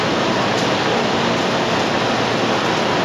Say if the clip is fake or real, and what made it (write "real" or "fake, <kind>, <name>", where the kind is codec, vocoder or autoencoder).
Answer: real